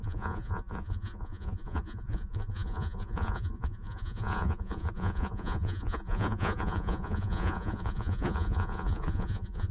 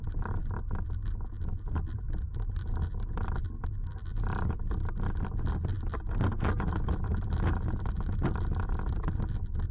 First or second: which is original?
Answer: second